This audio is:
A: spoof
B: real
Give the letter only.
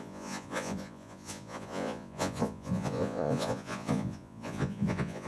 A